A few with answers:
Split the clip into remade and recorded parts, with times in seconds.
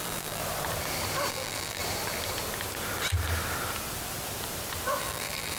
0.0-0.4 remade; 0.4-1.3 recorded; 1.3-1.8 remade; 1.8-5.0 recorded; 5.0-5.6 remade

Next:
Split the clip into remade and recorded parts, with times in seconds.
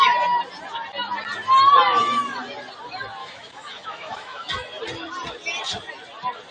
0.0-3.2 recorded; 3.2-4.5 remade; 4.5-6.5 recorded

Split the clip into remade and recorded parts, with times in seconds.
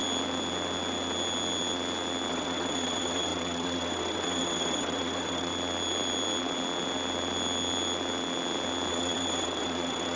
0.0-2.3 recorded; 2.3-5.5 remade; 5.5-8.9 recorded; 8.9-10.2 remade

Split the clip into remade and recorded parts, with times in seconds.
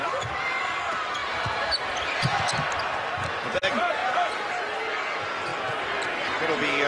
0.0-1.2 recorded; 1.2-2.3 remade; 2.3-6.9 recorded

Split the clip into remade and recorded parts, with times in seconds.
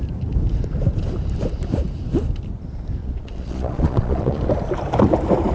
0.0-3.0 recorded; 3.0-4.4 remade; 4.4-5.5 recorded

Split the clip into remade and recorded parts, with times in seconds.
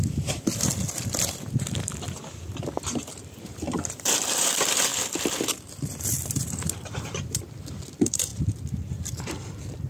0.0-4.9 remade; 4.9-5.7 recorded; 5.7-8.3 remade; 8.3-8.9 recorded; 8.9-9.9 remade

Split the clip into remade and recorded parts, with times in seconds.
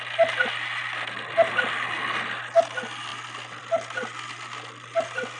0.0-5.4 recorded